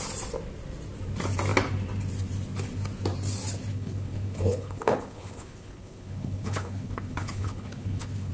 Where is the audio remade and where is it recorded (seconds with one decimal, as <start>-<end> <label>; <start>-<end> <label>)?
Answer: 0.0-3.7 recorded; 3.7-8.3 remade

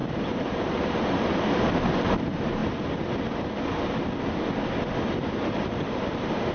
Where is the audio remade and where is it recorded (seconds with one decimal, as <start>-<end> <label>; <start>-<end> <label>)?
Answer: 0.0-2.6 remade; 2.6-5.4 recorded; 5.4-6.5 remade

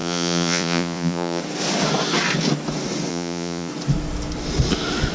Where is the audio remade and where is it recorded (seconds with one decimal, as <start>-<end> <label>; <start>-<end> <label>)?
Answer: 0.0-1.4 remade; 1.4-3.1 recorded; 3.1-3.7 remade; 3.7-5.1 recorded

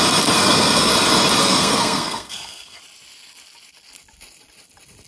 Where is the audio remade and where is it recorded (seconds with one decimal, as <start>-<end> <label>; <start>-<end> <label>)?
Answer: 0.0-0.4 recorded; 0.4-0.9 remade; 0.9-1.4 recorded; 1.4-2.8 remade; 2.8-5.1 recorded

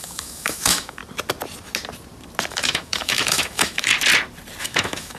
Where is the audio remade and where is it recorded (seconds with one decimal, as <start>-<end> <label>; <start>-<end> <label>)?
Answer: 0.0-1.0 remade; 1.0-2.5 recorded; 2.5-3.9 remade; 3.9-4.6 recorded; 4.6-5.2 remade